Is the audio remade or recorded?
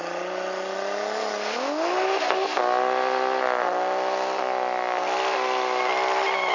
recorded